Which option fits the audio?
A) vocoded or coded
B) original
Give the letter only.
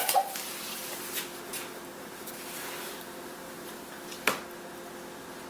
B